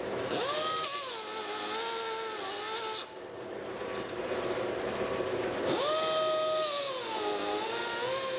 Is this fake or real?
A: real